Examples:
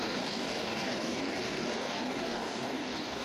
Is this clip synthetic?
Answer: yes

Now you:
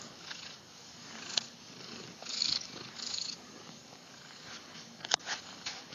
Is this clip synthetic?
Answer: yes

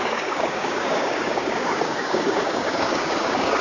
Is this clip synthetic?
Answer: yes